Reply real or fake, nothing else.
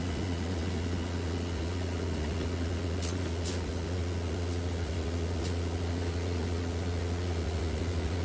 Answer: fake